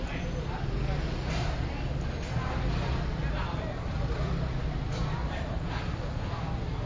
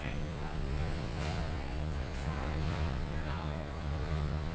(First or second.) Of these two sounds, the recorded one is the first